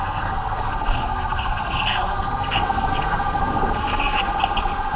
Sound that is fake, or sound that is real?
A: fake